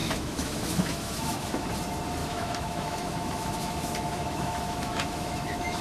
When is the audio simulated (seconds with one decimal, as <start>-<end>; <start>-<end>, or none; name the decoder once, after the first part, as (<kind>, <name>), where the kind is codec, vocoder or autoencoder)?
0.0-1.7 (autoencoder, DAC-VAE); 2.2-5.8